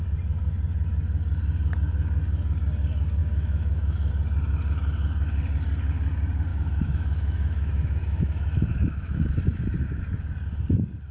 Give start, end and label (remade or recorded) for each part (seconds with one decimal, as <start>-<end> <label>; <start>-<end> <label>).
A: 0.0-3.2 recorded; 3.2-4.1 remade; 4.1-6.5 recorded; 6.5-10.0 remade; 10.0-11.1 recorded